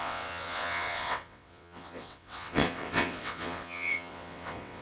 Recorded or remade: remade